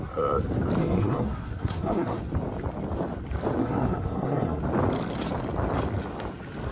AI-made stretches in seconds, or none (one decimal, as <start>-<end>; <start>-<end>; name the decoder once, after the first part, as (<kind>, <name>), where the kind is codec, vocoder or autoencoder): 0.8-2.2 (codec, SNAC); 3.6-4.6

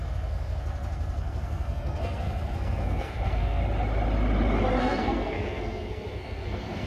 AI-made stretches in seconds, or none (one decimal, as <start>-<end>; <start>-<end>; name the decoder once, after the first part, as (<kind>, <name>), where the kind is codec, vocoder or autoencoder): 0.0-3.6 (codec, SNAC); 4.8-6.9